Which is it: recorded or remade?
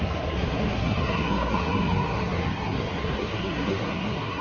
remade